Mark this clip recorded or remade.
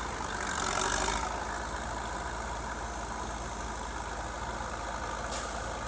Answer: recorded